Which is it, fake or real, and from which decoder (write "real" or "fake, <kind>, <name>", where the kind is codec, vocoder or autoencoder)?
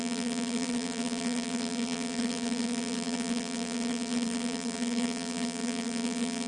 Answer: fake, vocoder, BigVGAN v2